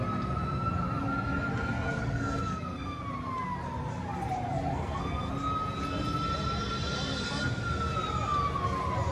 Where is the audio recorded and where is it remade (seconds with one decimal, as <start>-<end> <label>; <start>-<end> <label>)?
0.0-2.0 recorded; 2.0-3.0 remade; 3.0-4.7 recorded; 4.7-5.3 remade; 5.3-9.1 recorded